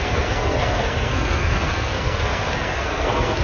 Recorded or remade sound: remade